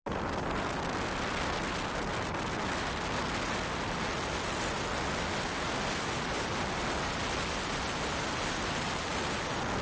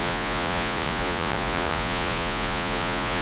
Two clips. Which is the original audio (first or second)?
first